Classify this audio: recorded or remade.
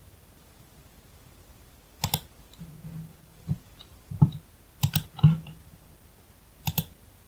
recorded